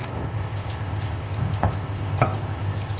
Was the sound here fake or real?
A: fake